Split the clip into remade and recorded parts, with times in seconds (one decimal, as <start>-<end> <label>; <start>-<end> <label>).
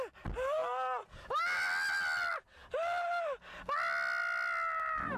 0.0-5.2 recorded